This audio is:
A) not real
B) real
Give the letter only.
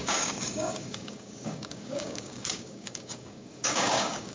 A